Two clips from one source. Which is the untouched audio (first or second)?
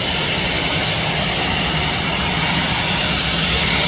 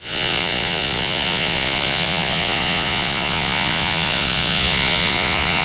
first